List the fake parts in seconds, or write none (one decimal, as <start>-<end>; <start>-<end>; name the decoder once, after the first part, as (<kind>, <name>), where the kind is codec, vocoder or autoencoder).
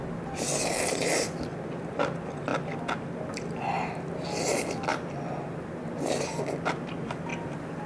none